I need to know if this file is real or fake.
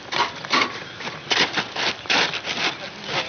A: real